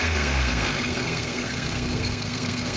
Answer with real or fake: fake